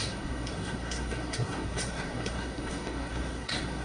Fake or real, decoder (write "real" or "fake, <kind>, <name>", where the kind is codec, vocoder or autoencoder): fake, codec, SNAC